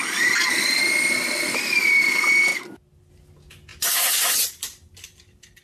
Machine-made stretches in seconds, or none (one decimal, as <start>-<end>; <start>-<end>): none